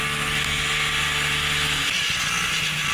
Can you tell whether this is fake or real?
real